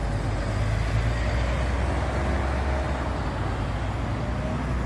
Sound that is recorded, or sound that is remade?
recorded